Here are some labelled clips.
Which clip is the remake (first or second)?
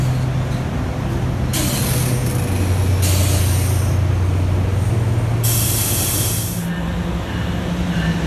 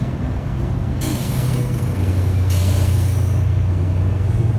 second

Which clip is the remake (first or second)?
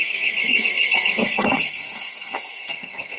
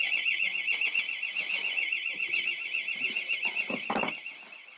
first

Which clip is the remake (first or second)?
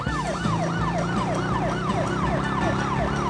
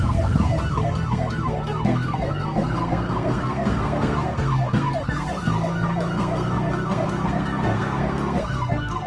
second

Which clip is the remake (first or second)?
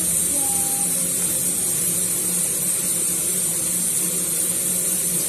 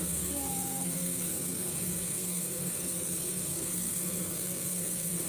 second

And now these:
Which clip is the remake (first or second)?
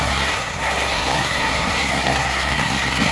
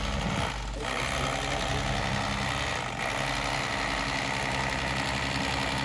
first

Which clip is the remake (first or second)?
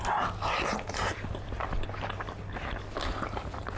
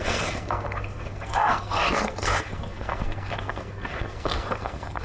second